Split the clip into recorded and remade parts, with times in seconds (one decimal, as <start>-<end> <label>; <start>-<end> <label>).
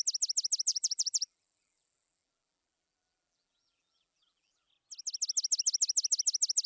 0.0-0.7 recorded; 0.7-4.7 remade; 4.7-6.7 recorded